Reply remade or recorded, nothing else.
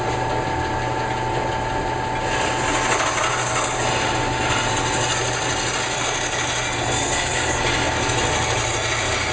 recorded